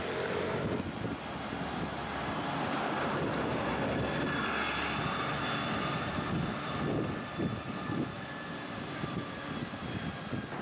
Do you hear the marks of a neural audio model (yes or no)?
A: no